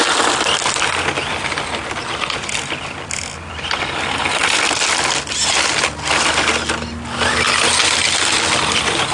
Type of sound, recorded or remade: recorded